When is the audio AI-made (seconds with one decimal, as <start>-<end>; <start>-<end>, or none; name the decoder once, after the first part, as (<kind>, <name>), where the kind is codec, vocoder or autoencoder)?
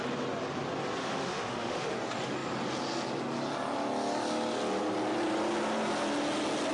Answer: 1.0-1.9 (autoencoder, DAC-VAE)